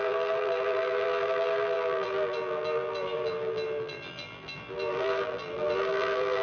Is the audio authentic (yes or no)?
no